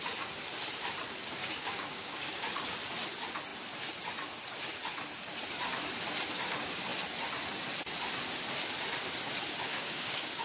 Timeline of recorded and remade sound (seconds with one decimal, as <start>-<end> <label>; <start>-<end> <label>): 0.0-1.4 recorded; 1.4-2.4 remade; 2.4-9.7 recorded; 9.7-10.4 remade